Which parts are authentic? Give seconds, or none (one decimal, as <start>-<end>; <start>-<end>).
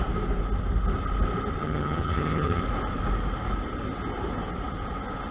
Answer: 0.0-1.6; 2.6-5.3